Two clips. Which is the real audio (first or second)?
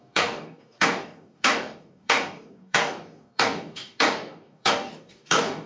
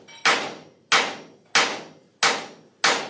second